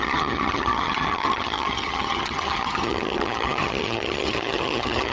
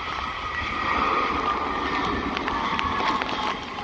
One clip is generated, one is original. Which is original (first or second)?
second